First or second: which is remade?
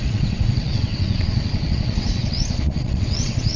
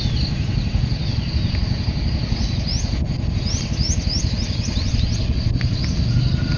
first